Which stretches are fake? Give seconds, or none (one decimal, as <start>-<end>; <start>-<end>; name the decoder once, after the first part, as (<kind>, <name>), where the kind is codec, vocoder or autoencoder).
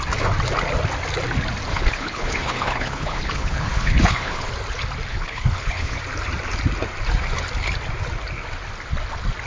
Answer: 1.7-4.5 (codec, HILCodec); 5.1-6.0